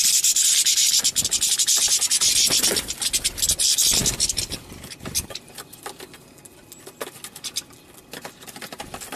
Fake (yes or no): no